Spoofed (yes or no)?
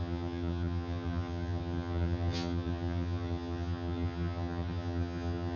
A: yes